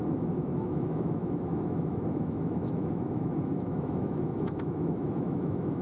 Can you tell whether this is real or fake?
fake